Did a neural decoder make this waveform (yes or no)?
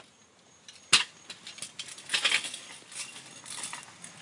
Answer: no